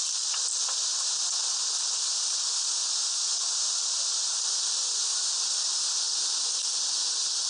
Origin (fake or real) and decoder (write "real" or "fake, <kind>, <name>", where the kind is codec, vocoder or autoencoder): real